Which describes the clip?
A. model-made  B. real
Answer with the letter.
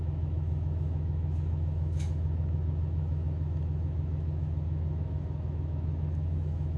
A